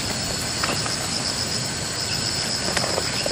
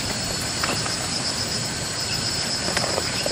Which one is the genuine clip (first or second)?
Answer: first